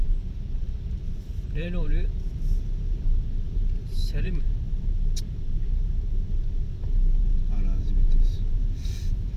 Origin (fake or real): fake